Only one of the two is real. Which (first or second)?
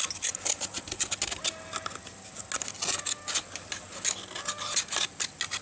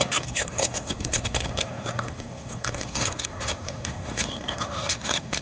first